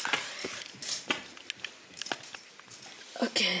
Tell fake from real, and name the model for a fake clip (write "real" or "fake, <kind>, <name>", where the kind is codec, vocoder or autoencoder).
real